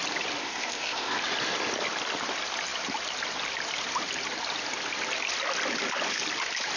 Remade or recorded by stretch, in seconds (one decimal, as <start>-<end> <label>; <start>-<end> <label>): 0.0-0.4 recorded; 0.4-1.2 remade; 1.2-6.8 recorded